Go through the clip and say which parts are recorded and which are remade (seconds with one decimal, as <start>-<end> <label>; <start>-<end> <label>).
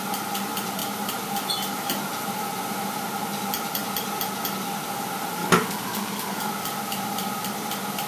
0.0-5.4 recorded; 5.4-6.4 remade; 6.4-8.1 recorded